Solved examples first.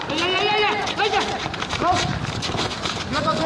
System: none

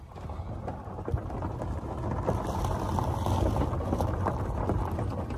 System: none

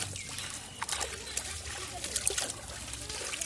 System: none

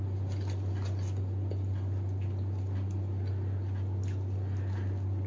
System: none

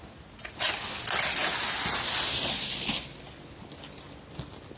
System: none